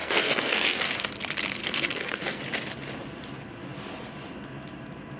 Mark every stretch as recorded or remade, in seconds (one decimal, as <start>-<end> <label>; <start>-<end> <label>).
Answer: 0.0-1.1 remade; 1.1-1.6 recorded; 1.6-2.4 remade; 2.4-5.2 recorded